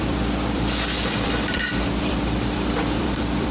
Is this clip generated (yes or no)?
yes